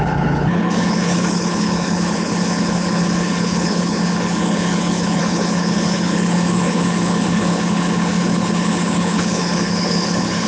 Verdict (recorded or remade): remade